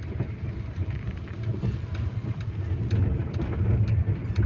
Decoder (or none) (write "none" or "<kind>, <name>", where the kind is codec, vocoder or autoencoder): none